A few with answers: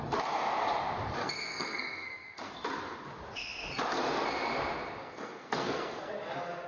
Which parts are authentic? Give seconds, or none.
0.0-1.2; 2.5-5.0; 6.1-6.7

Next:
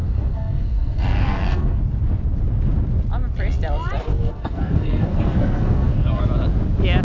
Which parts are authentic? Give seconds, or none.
1.8-4.1; 6.2-7.0

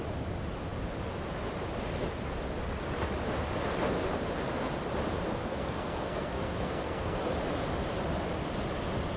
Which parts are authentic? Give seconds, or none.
0.0-5.4; 7.2-9.2

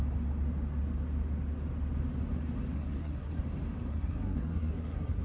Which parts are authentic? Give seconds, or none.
0.0-2.7; 3.4-3.9

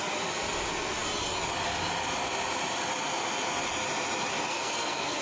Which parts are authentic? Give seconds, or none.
0.0-4.5

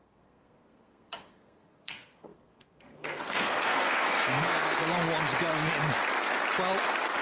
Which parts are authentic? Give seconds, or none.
4.8-7.2